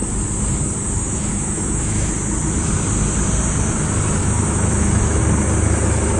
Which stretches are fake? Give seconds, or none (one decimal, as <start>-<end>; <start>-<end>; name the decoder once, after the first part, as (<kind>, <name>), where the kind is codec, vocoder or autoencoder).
1.0-2.1 (autoencoder, DAC-VAE); 4.2-5.2